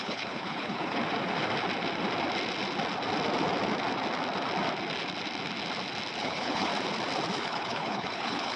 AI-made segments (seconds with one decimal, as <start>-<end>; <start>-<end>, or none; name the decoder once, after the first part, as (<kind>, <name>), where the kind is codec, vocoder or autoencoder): 0.0-1.0 (codec, HILCodec); 6.2-6.7; 7.4-8.6